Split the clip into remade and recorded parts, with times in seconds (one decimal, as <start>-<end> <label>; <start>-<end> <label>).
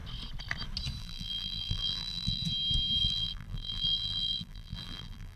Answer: 0.0-1.0 recorded; 1.0-2.4 remade; 2.4-3.0 recorded; 3.0-5.4 remade